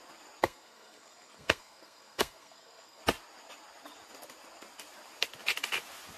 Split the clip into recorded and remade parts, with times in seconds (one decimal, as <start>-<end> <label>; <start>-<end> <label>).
0.0-0.4 recorded; 0.4-3.0 remade; 3.0-6.2 recorded